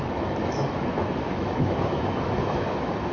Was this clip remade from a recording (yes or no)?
yes